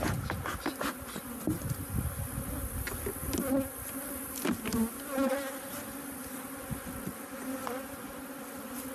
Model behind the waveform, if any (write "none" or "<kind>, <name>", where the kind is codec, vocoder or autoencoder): none